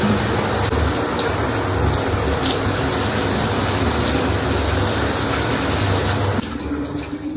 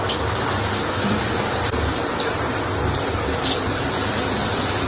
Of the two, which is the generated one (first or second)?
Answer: second